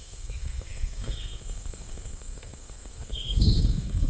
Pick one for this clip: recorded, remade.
remade